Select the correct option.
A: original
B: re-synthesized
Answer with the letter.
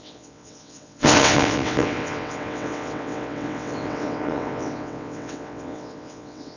B